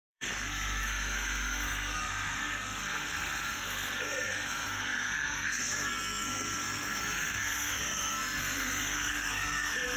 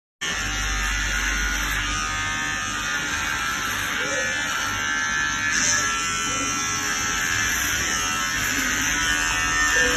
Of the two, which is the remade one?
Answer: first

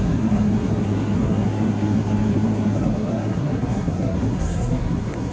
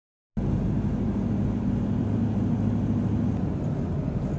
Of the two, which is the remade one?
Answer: first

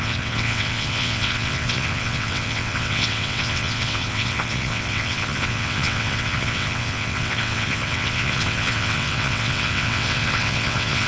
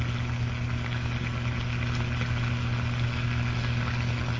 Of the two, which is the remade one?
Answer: first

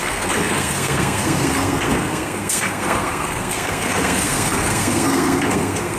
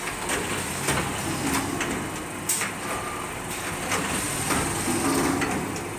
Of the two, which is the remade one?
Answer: first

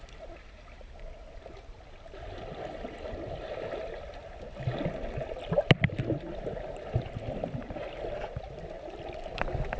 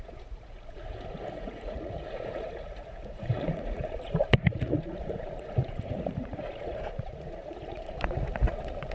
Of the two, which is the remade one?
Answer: second